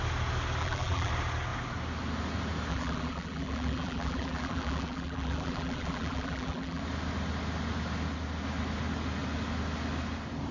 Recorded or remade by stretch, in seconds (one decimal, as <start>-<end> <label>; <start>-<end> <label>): 0.0-0.6 recorded; 0.6-1.1 remade; 1.1-2.7 recorded; 2.7-6.8 remade; 6.8-10.5 recorded